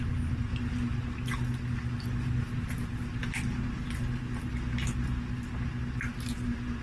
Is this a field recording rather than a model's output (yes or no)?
yes